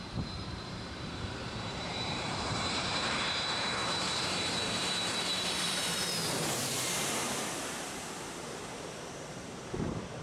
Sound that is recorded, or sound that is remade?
remade